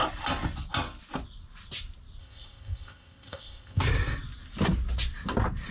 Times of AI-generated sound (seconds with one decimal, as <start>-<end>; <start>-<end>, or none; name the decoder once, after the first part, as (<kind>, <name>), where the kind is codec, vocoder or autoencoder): 2.2-3.8 (codec, ZipCodec)